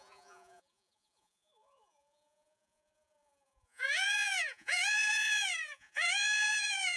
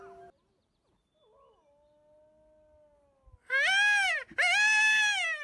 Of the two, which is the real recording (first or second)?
second